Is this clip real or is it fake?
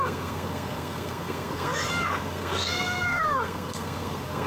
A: fake